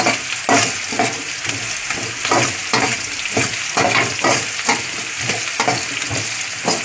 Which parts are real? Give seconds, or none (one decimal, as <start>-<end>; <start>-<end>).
0.0-6.8